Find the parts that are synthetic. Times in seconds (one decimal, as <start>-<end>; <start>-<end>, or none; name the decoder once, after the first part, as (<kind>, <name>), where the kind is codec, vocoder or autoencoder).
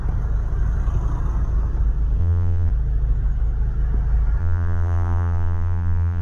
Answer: 2.2-2.7 (vocoder, BigVGAN v2); 4.4-6.2